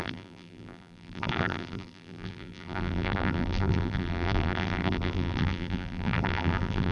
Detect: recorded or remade remade